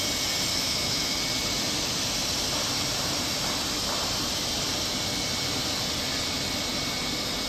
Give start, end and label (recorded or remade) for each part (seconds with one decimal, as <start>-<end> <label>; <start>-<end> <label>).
0.0-0.5 recorded; 0.5-1.2 remade; 1.2-7.5 recorded